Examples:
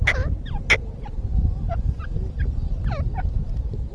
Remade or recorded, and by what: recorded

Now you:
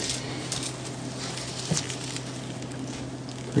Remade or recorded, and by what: recorded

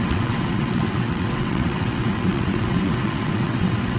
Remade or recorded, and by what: remade, vocoder, WaveNeXt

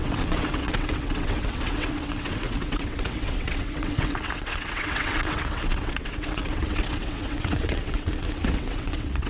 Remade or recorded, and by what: remade, vocoder, WaveNeXt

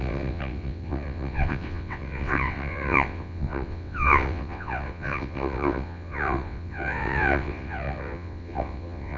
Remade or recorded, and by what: remade, vocoder, WaveNeXt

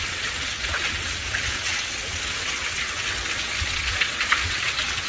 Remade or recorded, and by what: remade, vocoder, WaveNeXt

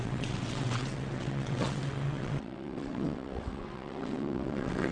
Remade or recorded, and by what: remade, vocoder, WaveNeXt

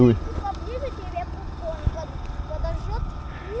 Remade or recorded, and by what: recorded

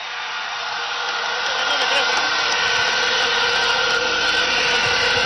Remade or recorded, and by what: recorded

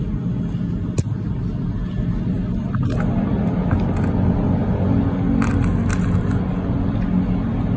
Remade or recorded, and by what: recorded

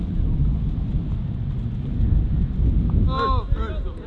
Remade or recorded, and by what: recorded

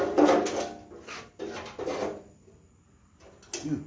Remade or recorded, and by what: recorded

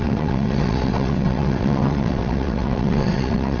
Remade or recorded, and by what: remade, vocoder, WaveNeXt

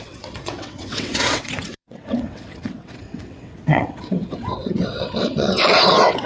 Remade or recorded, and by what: remade, vocoder, WaveNeXt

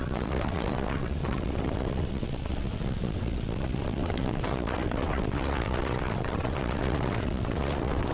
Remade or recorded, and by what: remade, vocoder, WaveNeXt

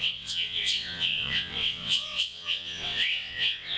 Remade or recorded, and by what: remade, vocoder, WaveNeXt